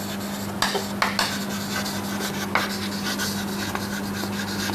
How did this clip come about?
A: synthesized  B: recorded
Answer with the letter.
B